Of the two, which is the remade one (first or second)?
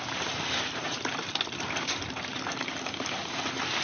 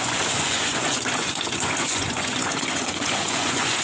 second